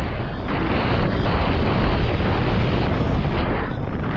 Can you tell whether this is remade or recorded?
recorded